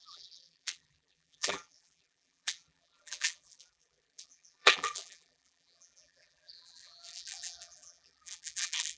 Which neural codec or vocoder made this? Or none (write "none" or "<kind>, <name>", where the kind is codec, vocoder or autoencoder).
vocoder, BigVGAN v2